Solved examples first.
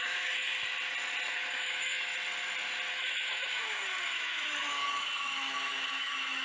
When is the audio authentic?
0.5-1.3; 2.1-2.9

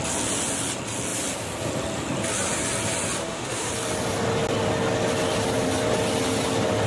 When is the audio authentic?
0.0-3.2; 3.7-6.9

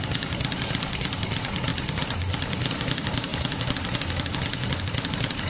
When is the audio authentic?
1.7-2.7; 3.3-4.8

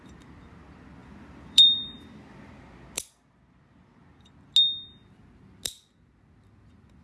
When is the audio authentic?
0.0-1.0; 2.5-7.0